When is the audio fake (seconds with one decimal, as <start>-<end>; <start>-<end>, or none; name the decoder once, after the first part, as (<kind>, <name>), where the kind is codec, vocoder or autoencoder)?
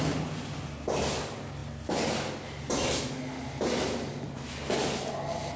none